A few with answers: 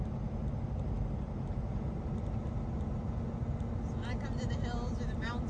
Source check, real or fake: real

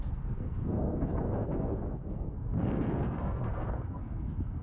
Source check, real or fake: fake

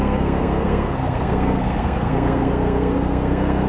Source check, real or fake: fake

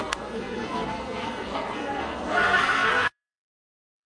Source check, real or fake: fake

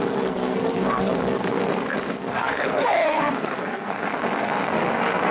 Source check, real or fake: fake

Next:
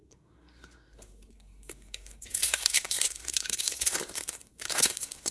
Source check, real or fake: fake